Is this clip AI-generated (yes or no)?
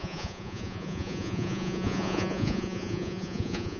yes